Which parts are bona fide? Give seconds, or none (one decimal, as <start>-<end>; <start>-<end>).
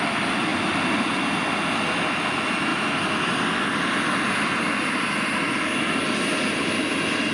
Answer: 0.0-7.3